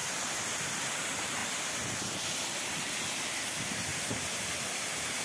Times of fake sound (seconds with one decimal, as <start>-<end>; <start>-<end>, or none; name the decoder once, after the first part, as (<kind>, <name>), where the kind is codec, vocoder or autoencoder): 0.0-1.4 (vocoder, BigVGAN v2); 2.2-5.2

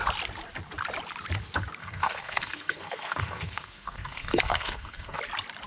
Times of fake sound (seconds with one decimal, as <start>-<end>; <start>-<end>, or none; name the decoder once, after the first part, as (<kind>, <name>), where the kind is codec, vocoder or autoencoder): 1.8-5.2 (codec, SNAC)

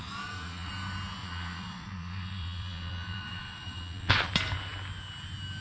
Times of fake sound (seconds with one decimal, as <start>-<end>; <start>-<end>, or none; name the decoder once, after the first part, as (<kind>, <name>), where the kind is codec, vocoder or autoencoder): 0.0-0.7 (vocoder, Vocos); 1.2-4.3

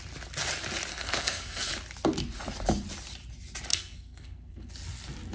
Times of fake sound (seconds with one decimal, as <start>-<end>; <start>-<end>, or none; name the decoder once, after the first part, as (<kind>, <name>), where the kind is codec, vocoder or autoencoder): 0.9-1.7 (codec, SNAC); 3.7-4.7